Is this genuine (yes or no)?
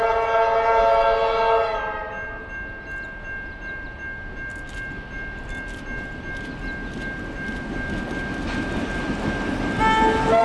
yes